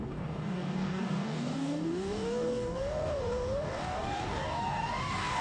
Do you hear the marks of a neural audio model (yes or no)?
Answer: yes